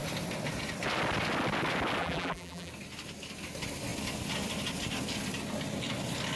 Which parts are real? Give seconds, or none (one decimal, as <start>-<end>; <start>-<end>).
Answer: 0.0-2.0; 2.7-6.4